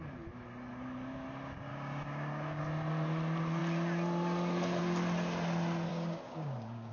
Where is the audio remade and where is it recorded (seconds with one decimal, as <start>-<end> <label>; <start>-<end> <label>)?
0.0-1.7 recorded; 1.7-2.6 remade; 2.6-5.9 recorded; 5.9-6.9 remade